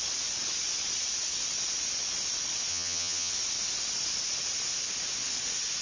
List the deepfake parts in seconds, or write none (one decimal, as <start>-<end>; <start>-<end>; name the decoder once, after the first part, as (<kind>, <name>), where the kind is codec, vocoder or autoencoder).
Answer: 2.7-3.3 (vocoder, HiFi-GAN)